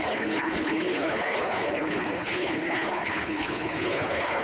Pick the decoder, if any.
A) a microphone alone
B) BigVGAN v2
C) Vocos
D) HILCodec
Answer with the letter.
D